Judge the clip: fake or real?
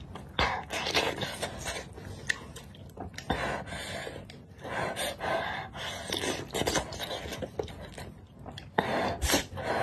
real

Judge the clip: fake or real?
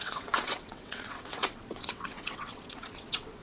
fake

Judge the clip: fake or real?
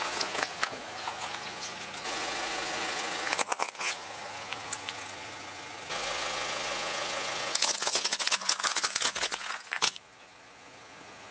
fake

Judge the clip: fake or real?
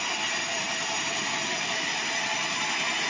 real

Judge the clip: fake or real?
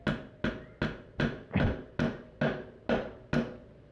real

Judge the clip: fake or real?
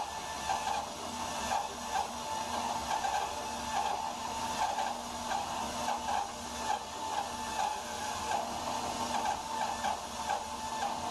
real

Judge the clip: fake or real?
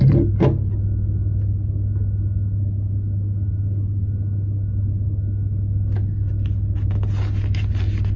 real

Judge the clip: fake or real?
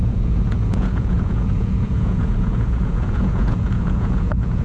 fake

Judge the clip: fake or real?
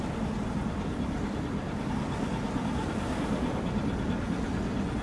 real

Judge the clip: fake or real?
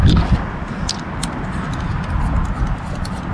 real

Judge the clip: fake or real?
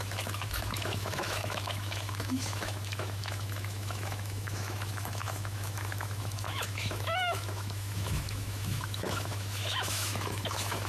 fake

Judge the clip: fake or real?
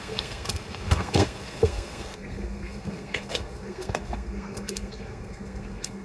fake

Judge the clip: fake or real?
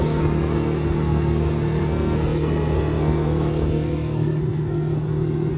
fake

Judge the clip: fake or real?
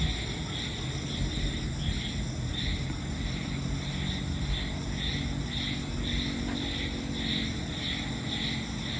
real